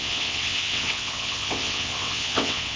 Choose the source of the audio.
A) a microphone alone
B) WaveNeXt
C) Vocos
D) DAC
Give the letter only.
B